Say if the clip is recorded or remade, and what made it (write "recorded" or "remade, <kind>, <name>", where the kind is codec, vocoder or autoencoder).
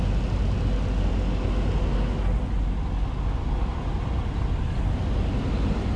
recorded